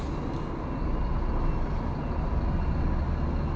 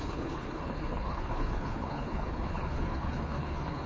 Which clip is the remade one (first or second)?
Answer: second